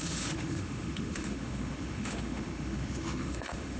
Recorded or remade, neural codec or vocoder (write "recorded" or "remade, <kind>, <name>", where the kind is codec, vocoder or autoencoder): remade, autoencoder, DAC-VAE